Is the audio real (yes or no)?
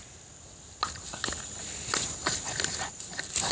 yes